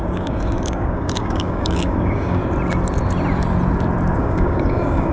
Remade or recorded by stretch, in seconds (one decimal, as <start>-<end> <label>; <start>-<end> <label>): 0.0-2.4 remade; 2.4-4.2 recorded; 4.2-5.1 remade